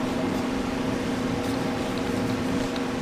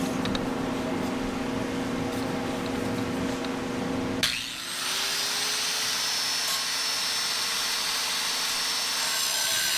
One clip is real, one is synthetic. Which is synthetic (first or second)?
first